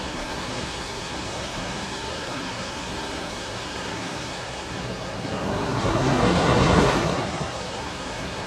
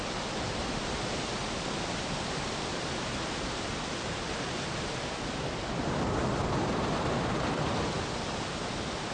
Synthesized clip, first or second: first